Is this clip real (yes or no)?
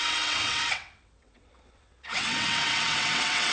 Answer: no